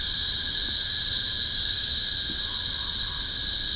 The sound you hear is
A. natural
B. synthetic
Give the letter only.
A